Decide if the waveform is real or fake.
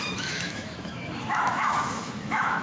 fake